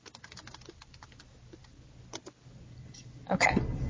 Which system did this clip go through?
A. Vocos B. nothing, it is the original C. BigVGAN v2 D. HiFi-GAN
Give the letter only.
B